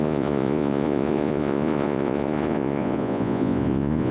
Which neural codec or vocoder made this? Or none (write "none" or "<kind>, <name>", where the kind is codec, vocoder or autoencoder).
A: vocoder, Vocos